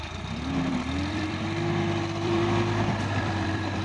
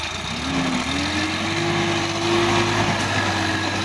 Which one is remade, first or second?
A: first